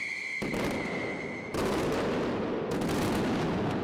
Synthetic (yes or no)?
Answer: no